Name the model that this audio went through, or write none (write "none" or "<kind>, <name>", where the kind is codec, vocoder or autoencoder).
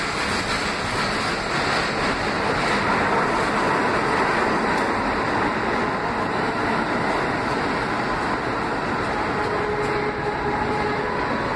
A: none